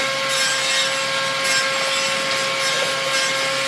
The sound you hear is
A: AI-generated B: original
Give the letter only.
B